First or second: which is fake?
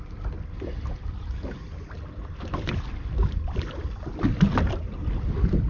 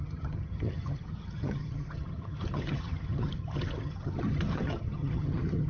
second